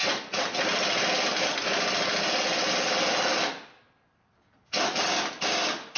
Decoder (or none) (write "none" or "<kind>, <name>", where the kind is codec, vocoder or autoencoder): none